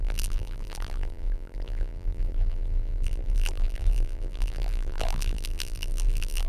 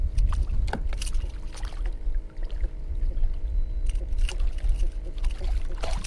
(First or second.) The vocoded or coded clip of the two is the first